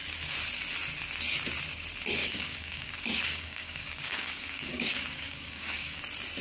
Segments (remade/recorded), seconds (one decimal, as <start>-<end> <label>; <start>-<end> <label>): 0.0-2.2 recorded; 2.2-6.0 remade; 6.0-6.4 recorded